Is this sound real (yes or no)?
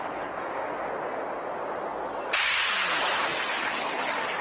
yes